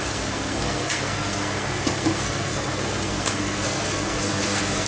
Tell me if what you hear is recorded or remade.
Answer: remade